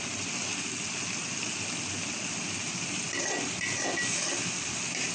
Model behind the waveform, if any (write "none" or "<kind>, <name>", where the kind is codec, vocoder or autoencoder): none